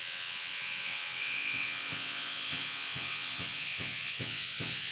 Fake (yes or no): yes